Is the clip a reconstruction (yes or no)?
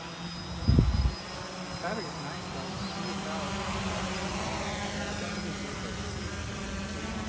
no